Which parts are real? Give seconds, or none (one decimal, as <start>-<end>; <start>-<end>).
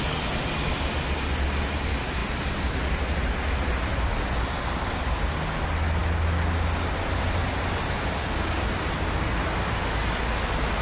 0.0-10.8